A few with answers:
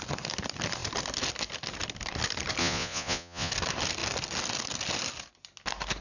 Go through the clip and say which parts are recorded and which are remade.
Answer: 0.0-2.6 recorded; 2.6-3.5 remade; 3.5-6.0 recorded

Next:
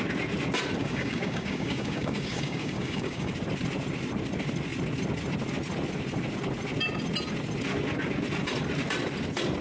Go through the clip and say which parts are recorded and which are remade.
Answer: 0.0-0.8 recorded; 0.8-3.3 remade; 3.3-9.6 recorded

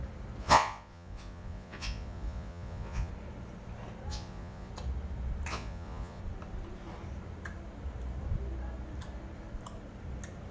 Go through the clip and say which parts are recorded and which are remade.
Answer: 0.0-0.4 recorded; 0.4-3.1 remade; 3.1-4.1 recorded; 4.1-4.7 remade; 4.7-5.5 recorded; 5.5-6.2 remade; 6.2-10.5 recorded

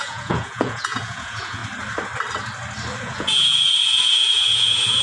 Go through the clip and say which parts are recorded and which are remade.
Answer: 0.0-1.6 remade; 1.6-3.0 recorded; 3.0-5.0 remade

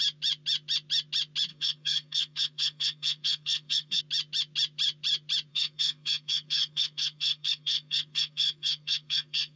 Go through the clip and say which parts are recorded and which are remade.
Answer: 0.0-1.5 recorded; 1.5-4.0 remade; 4.0-5.5 recorded; 5.5-9.6 remade